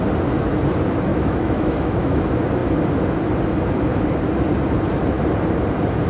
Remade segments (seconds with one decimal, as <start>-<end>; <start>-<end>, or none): 1.1-2.2